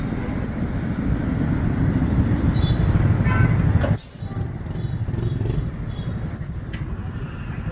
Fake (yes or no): no